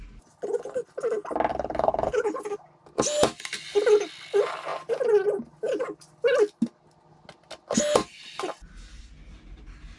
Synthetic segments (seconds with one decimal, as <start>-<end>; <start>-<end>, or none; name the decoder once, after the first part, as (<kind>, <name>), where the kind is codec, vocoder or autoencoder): 1.5-2.4 (codec, HILCodec)